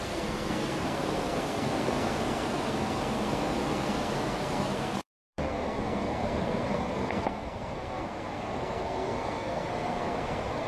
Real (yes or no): no